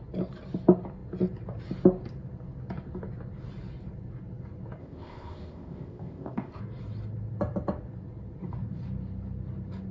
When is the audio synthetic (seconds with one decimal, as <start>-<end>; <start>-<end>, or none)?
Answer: 4.8-6.6